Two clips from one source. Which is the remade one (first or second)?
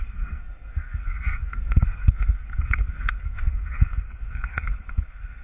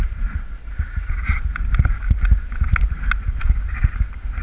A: first